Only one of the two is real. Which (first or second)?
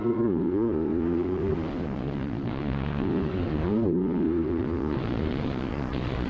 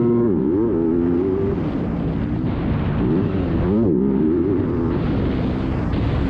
second